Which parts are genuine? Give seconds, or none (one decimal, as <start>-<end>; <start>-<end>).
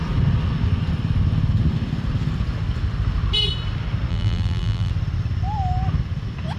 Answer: 0.0-4.1; 4.9-6.6